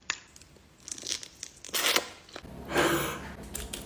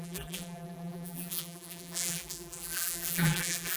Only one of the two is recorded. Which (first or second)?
first